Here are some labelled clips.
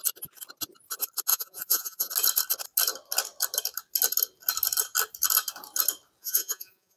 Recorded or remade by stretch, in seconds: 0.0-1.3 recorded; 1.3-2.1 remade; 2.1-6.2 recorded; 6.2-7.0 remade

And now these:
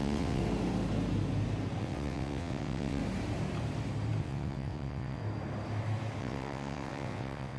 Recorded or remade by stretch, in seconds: 0.0-0.4 remade; 0.4-1.8 recorded; 1.8-3.0 remade; 3.0-4.2 recorded; 4.2-5.2 remade; 5.2-6.2 recorded; 6.2-7.6 remade

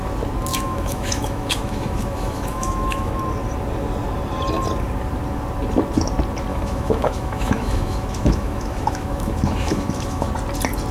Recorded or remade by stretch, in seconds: 0.0-0.5 recorded; 0.5-3.1 remade; 3.1-6.5 recorded; 6.5-10.3 remade; 10.3-10.9 recorded

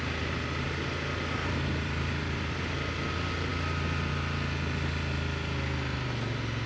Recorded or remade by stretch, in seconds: 0.0-1.4 recorded; 1.4-2.7 remade; 2.7-6.7 recorded

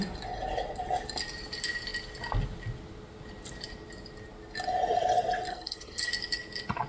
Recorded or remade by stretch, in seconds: 0.0-5.5 recorded; 5.5-6.1 remade; 6.1-6.9 recorded

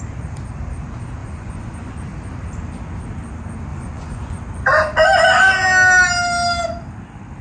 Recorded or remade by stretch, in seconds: 0.0-1.2 recorded; 1.2-1.9 remade; 1.9-3.7 recorded; 3.7-4.4 remade; 4.4-7.4 recorded

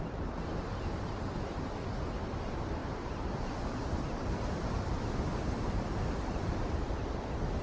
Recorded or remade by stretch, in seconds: 0.0-7.6 recorded